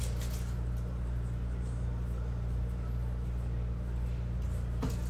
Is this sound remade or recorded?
recorded